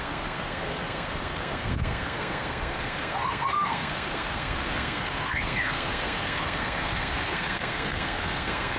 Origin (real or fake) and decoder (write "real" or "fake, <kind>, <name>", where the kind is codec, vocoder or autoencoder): fake, codec, SNAC